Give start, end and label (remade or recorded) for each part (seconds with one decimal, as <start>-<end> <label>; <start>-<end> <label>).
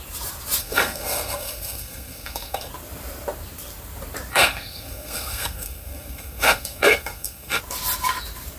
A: 0.0-0.6 recorded; 0.6-2.7 remade; 2.7-4.3 recorded; 4.3-7.6 remade; 7.6-8.6 recorded